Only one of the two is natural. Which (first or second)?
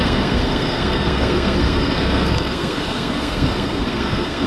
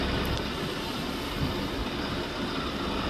second